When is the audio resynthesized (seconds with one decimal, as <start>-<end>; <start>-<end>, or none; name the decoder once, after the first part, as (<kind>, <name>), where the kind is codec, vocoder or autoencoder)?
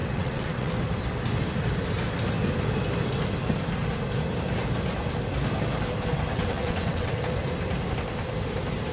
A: 0.0-0.7 (vocoder, WaveNeXt); 6.1-7.1